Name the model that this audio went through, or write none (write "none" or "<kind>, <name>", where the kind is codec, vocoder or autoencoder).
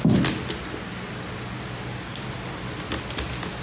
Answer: none